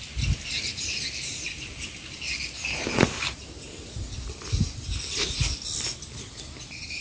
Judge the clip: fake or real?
real